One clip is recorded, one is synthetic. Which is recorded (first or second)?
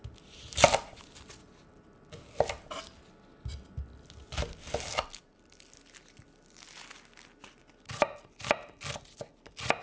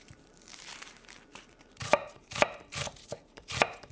first